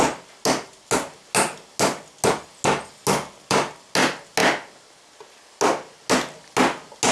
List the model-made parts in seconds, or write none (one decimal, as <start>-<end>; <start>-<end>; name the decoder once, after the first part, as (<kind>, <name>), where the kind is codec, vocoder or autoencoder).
none